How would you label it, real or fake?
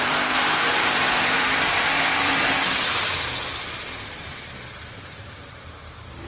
fake